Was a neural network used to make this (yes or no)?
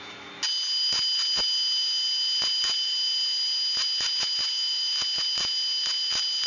no